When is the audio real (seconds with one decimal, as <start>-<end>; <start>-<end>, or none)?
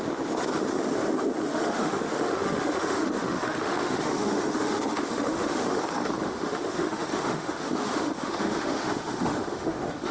0.0-1.5; 5.8-6.2